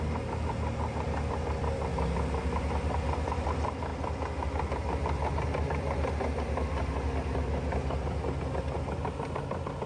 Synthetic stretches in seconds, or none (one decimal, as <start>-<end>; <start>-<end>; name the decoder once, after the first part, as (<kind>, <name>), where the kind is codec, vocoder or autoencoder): none